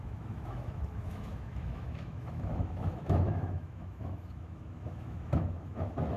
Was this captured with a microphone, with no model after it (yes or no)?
no